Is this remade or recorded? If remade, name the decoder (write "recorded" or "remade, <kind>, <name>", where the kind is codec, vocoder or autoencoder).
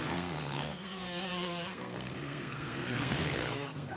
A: remade, codec, SNAC